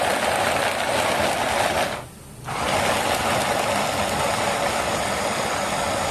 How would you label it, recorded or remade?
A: recorded